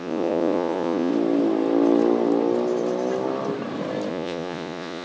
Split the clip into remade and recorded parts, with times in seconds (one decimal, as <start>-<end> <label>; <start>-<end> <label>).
0.0-1.1 remade; 1.1-4.1 recorded; 4.1-5.0 remade